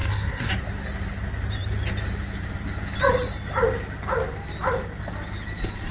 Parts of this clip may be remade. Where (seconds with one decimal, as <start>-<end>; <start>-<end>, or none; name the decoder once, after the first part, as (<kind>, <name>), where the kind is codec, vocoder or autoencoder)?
0.0-0.5 (codec, SNAC)

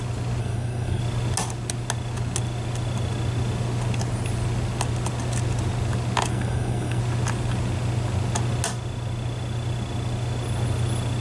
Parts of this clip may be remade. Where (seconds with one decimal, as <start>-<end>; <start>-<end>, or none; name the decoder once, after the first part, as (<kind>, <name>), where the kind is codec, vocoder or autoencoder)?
0.4-1.0 (codec, SNAC); 6.3-7.0

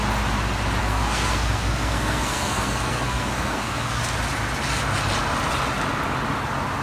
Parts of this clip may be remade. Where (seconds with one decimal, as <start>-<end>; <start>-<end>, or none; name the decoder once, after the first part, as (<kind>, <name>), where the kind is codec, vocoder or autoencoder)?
0.8-4.0 (codec, SNAC)